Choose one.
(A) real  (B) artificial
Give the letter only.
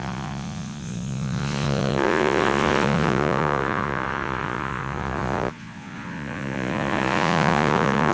B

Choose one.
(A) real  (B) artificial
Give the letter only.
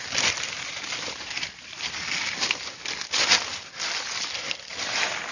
A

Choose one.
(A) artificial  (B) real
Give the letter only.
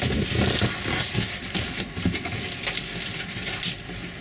B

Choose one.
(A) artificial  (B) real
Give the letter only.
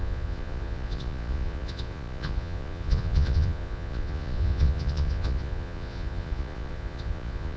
A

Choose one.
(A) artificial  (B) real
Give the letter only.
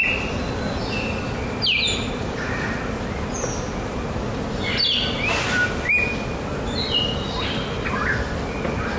B